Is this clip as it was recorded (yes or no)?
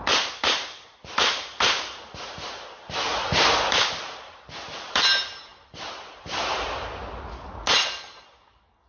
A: yes